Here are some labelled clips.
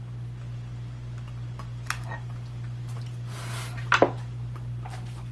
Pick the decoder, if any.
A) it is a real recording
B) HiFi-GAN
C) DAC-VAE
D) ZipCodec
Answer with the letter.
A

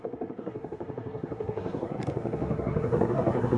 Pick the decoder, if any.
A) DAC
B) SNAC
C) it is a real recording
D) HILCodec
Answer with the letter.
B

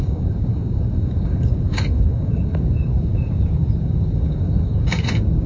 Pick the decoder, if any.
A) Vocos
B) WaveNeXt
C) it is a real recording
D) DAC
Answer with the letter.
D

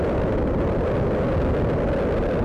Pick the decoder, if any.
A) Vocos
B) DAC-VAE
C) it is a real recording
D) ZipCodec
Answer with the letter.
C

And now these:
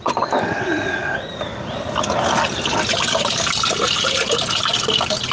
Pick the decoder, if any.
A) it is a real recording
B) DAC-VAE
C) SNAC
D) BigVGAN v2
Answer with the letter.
A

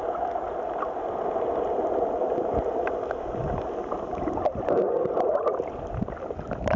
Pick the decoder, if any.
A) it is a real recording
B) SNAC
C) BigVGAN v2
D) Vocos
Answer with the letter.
A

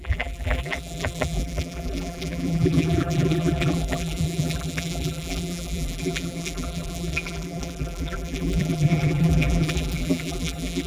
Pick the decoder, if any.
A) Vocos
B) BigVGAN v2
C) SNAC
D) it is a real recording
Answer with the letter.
B